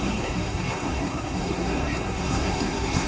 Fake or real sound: fake